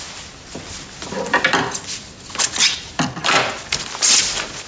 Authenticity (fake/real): real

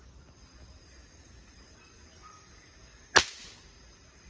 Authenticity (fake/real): real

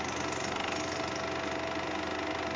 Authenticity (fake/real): real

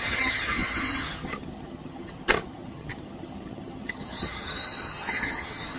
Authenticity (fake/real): fake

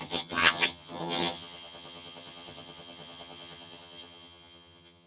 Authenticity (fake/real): fake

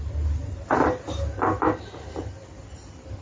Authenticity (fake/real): real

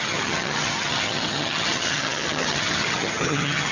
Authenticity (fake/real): fake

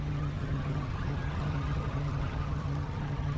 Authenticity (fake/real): fake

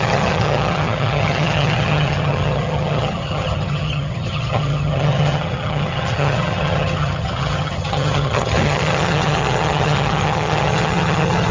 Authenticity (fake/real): fake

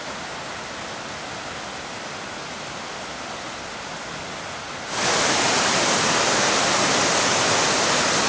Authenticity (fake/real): real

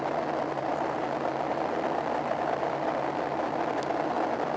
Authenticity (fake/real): real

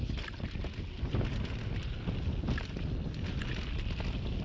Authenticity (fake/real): real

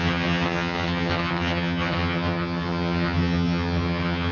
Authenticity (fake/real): fake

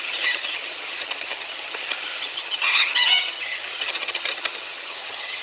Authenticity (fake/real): fake